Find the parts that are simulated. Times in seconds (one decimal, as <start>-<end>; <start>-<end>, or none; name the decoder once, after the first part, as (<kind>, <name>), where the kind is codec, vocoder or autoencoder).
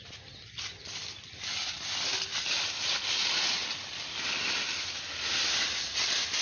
none